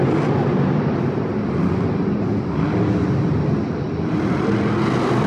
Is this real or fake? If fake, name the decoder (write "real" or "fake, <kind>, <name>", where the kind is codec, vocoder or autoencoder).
real